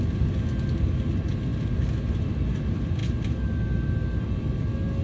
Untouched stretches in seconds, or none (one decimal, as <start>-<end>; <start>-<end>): 0.0-5.0